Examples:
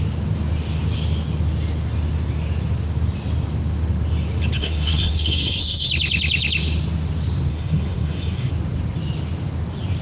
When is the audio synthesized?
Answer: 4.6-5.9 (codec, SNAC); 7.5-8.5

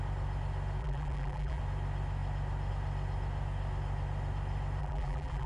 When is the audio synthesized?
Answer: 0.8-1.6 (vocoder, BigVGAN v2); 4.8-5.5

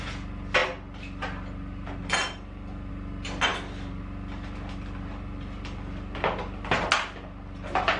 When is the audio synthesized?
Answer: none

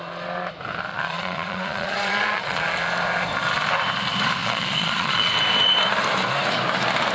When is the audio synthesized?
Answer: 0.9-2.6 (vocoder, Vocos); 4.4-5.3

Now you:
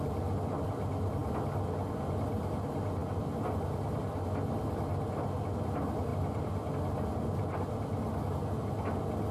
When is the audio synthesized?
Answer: none